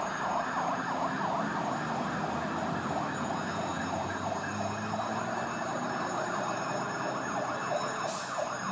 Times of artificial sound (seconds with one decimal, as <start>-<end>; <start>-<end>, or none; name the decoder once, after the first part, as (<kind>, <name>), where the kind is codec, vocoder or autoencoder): none